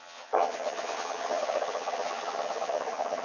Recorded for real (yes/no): no